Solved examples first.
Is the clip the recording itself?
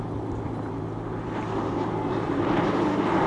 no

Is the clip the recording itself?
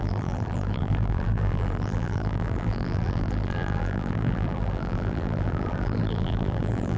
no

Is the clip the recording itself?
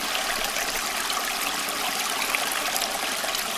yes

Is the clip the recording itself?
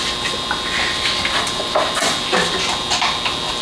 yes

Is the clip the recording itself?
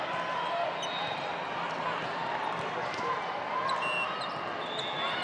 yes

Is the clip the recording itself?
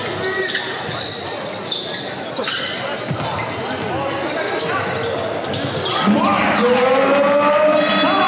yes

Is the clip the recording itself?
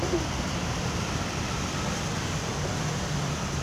no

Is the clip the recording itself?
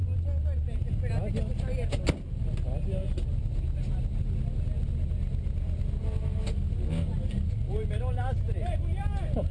yes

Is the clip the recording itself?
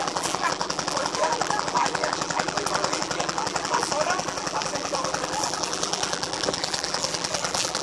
no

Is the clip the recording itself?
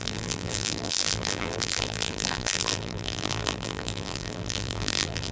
no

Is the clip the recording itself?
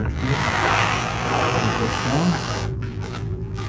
no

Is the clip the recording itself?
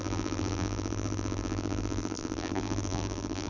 no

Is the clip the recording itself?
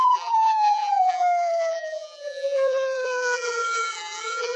no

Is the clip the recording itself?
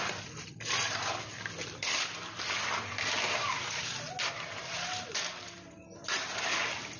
yes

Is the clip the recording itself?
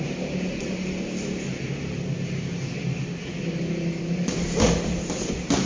yes